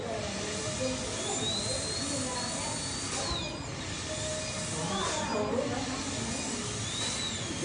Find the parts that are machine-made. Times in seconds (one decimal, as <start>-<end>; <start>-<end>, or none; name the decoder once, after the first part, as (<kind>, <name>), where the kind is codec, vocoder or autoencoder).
none